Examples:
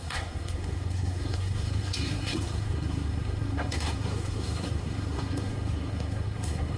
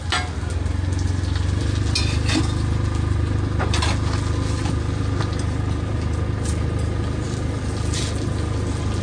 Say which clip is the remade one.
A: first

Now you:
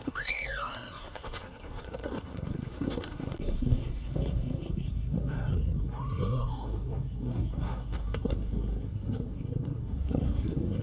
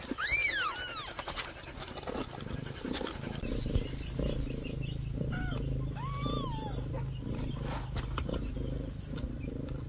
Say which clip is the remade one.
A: first